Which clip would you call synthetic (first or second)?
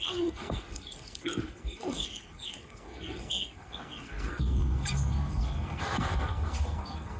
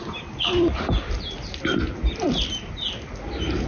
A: first